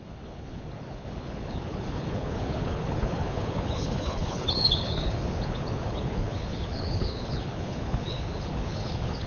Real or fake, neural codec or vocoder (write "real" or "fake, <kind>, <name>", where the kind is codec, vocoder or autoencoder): fake, codec, HILCodec